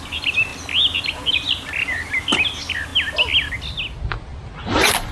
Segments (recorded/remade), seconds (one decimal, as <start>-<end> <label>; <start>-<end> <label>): 0.0-5.1 recorded